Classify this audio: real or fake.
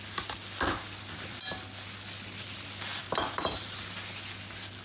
real